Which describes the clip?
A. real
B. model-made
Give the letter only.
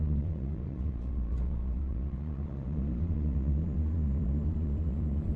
B